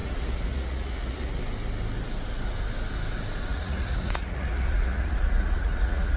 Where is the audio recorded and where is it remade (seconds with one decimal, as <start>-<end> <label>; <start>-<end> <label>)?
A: 0.0-1.4 remade; 1.4-3.5 recorded; 3.5-6.2 remade